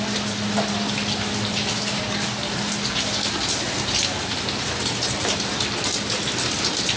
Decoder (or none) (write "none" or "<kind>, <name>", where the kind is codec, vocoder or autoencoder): none